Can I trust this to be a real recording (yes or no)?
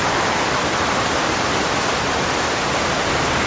yes